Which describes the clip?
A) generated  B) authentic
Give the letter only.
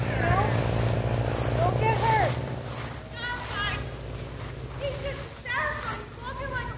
B